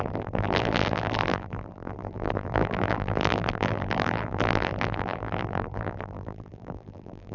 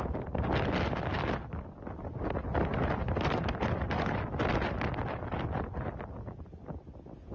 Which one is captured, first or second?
second